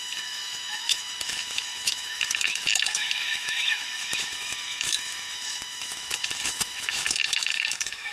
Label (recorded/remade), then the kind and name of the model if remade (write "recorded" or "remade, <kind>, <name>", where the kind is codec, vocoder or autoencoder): remade, autoencoder, DAC-VAE